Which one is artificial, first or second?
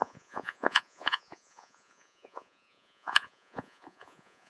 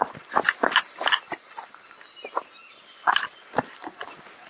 first